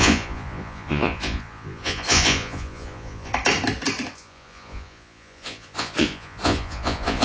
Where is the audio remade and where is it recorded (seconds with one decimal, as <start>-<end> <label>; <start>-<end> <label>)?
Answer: 0.0-3.3 remade; 3.3-4.1 recorded; 4.1-7.2 remade